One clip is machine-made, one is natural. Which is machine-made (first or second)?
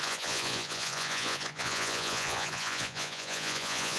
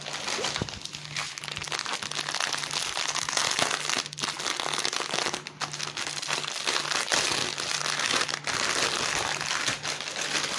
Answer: first